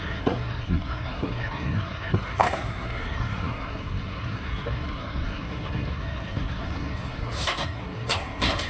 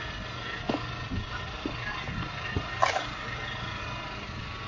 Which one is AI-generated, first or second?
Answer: first